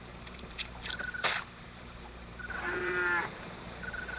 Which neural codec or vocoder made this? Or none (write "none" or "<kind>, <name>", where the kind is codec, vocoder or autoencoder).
vocoder, BigVGAN v2